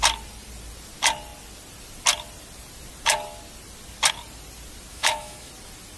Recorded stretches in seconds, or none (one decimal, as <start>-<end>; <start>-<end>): 0.0-4.9; 5.5-6.0